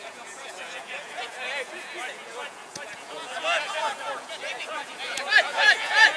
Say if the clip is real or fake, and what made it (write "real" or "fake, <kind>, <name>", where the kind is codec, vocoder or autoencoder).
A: fake, vocoder, Vocos